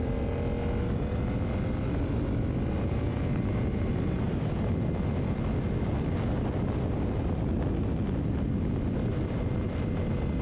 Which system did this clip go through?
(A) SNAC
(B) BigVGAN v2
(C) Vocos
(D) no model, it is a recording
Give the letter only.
D